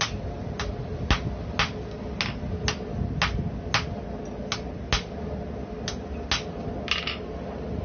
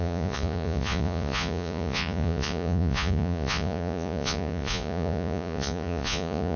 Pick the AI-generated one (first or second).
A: second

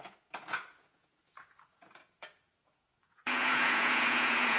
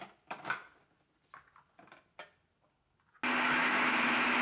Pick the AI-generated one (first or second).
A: first